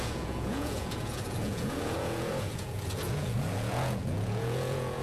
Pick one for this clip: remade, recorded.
remade